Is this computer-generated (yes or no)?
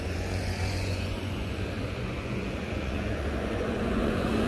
yes